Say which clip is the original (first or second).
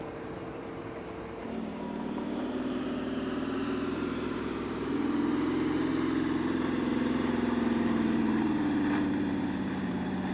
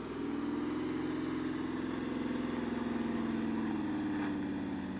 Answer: second